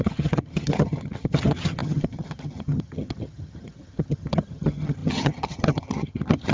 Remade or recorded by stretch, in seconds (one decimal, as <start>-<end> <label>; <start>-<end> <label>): 0.0-6.5 remade

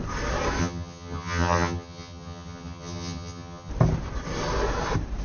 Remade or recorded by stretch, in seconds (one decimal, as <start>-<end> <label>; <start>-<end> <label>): 0.0-0.6 recorded; 0.6-3.7 remade; 3.7-5.2 recorded

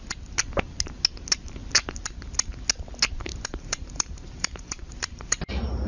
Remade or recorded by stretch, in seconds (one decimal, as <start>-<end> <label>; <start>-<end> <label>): 0.0-3.3 recorded; 3.3-5.9 remade